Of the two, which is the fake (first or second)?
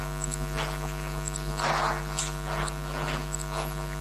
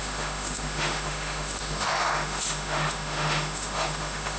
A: second